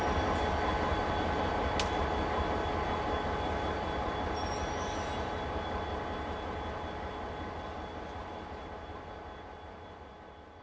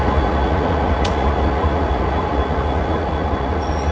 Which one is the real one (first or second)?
first